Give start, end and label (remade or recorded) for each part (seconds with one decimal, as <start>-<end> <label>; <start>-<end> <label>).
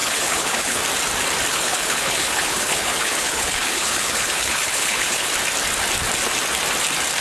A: 0.0-0.8 remade; 0.8-1.5 recorded; 1.5-5.3 remade; 5.3-7.2 recorded